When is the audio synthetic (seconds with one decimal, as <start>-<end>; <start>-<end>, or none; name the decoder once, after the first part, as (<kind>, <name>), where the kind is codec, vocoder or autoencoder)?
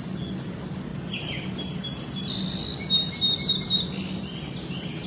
none